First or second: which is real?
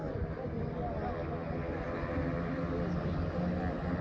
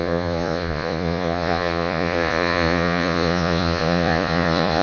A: first